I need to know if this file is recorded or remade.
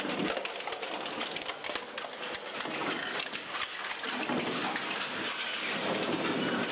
recorded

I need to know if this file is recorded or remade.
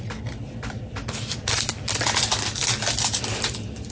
recorded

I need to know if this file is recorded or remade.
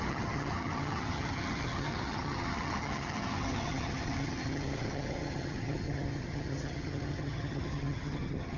remade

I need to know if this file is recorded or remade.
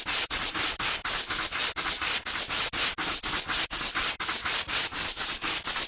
recorded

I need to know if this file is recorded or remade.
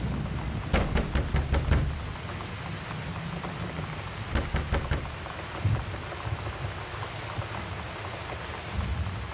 recorded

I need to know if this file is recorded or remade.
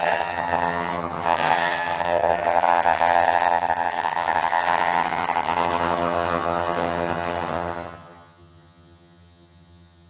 remade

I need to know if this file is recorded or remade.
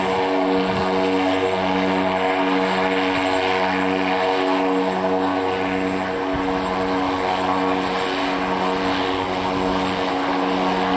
recorded